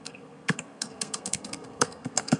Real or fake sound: fake